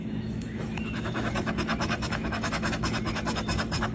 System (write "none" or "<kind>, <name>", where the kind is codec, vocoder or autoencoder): autoencoder, DAC-VAE